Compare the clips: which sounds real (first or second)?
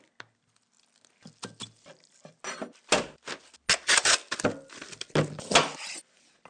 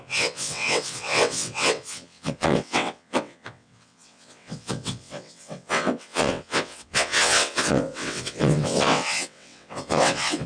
first